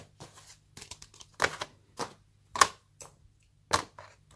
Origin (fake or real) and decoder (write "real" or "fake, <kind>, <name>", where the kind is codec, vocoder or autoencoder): real